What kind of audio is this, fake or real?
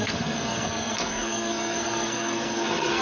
fake